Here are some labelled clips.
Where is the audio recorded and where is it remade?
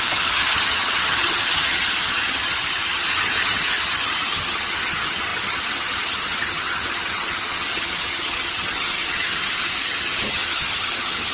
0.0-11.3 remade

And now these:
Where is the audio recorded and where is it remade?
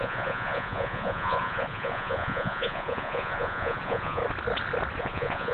0.0-4.2 remade; 4.2-5.0 recorded; 5.0-5.5 remade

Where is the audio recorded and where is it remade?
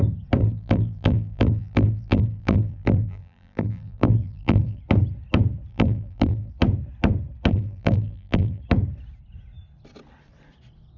0.0-0.4 recorded; 0.4-4.8 remade; 4.8-5.7 recorded; 5.7-6.5 remade; 6.5-7.5 recorded; 7.5-8.6 remade; 8.6-11.0 recorded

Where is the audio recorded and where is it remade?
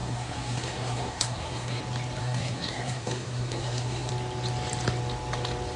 0.0-1.8 remade; 1.8-2.2 recorded; 2.2-4.1 remade; 4.1-5.8 recorded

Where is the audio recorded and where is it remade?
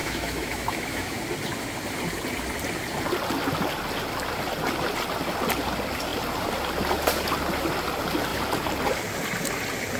0.0-1.2 remade; 1.2-10.0 recorded